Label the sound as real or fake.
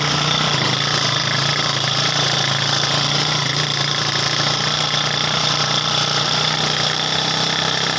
fake